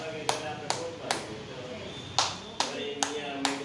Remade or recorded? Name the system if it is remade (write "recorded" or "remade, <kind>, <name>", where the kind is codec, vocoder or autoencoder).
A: recorded